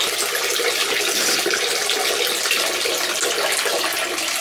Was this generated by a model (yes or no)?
no